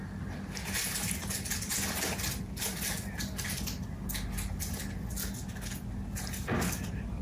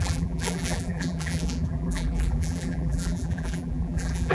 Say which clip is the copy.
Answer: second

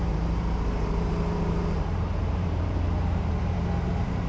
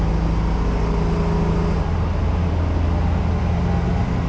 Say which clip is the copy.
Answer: first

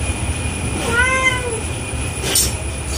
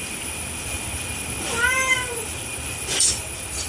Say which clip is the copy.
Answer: second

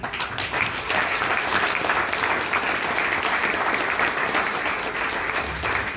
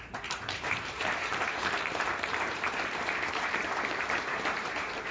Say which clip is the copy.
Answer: second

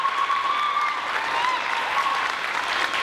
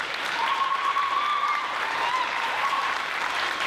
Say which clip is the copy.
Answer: second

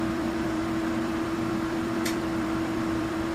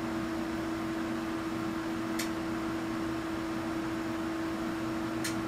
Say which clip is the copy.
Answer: first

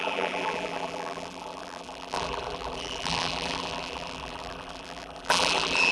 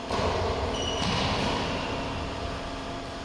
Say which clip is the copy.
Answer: first